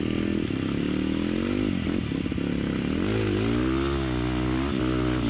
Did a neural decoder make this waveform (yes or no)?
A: no